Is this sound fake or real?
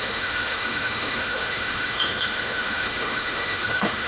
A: fake